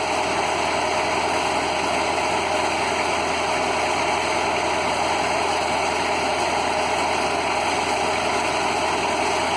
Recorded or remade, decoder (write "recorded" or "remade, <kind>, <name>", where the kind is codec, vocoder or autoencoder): recorded